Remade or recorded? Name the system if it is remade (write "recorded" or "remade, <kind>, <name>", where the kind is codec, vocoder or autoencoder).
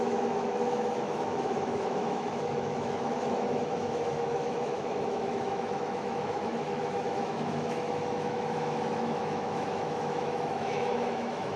remade, autoencoder, DAC-VAE